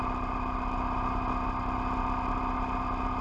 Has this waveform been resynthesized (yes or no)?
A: no